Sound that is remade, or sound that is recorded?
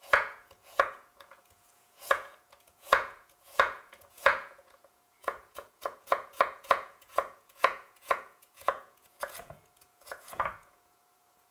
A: remade